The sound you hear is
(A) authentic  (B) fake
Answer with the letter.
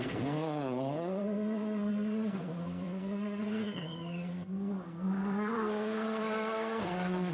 B